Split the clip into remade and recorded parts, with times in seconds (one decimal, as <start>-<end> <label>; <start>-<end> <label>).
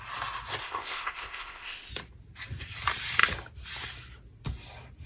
0.0-0.6 recorded; 0.6-1.9 remade; 1.9-5.1 recorded